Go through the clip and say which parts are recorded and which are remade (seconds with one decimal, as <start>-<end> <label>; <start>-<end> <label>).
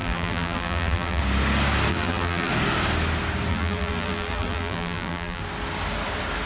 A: 0.0-1.2 remade; 1.2-1.9 recorded; 1.9-2.5 remade; 2.5-3.5 recorded; 3.5-5.4 remade; 5.4-6.5 recorded